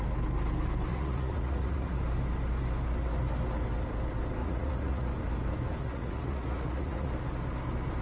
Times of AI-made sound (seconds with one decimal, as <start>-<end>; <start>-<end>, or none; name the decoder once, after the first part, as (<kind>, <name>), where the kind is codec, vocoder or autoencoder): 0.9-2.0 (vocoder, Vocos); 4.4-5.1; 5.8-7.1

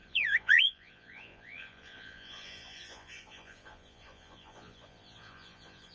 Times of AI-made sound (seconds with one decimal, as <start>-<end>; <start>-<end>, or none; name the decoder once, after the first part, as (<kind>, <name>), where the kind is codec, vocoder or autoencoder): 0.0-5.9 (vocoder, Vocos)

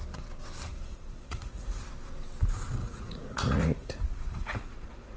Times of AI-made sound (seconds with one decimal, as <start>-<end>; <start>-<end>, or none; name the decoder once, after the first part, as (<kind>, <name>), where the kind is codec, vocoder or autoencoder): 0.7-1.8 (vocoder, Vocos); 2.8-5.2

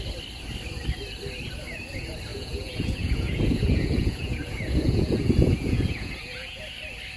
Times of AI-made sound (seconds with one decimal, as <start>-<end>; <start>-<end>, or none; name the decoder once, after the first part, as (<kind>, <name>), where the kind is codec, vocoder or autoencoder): 2.3-6.6 (vocoder, Vocos)

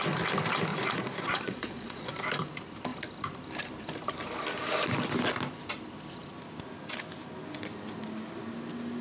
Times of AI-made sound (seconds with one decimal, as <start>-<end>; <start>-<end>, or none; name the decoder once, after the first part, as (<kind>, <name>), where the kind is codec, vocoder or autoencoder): 0.7-2.1 (vocoder, Vocos)

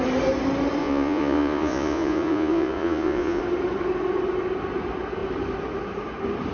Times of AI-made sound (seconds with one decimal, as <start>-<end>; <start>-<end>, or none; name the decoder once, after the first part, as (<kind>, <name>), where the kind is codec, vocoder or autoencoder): 0.8-3.4 (vocoder, Vocos)

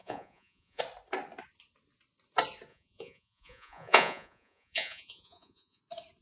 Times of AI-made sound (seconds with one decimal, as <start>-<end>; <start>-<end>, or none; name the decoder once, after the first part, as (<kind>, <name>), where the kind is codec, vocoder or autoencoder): 0.0-0.8 (vocoder, Vocos); 2.7-5.8